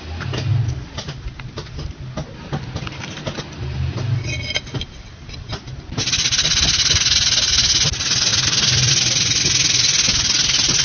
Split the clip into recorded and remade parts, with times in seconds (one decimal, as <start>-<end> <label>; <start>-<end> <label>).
0.0-10.8 recorded